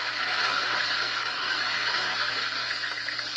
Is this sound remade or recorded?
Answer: remade